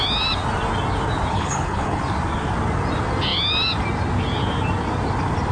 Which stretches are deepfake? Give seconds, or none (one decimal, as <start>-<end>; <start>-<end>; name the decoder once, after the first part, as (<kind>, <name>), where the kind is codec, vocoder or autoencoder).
1.3-2.0 (codec, HILCodec)